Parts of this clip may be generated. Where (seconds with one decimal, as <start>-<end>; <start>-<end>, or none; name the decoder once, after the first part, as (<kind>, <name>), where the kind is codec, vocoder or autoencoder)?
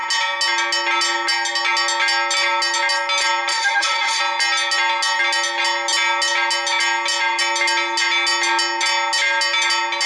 3.5-4.2 (autoencoder, DAC-VAE)